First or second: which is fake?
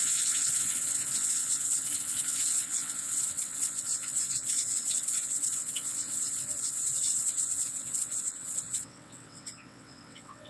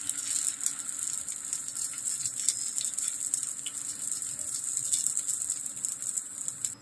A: first